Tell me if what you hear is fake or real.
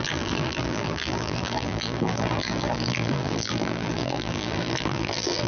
fake